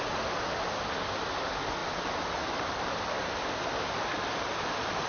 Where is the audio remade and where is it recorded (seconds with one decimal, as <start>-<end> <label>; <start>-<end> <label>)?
0.0-5.1 recorded